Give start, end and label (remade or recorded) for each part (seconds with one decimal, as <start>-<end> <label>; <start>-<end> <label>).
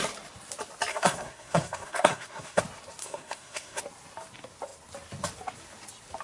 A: 0.0-0.9 recorded; 0.9-2.6 remade; 2.6-3.0 recorded; 3.0-3.8 remade; 3.8-6.2 recorded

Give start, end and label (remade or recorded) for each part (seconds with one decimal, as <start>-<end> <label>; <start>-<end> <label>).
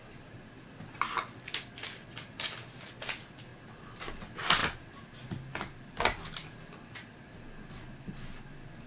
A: 0.0-8.9 recorded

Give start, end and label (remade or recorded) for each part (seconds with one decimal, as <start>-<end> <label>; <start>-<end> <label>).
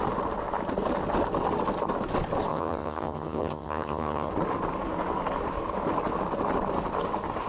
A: 0.0-2.5 recorded; 2.5-4.3 remade; 4.3-7.5 recorded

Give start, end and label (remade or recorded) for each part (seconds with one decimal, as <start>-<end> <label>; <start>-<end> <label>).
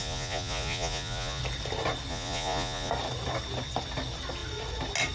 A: 0.0-1.4 remade; 1.4-2.1 recorded; 2.1-2.9 remade; 2.9-5.1 recorded